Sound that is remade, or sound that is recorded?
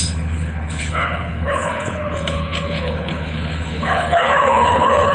remade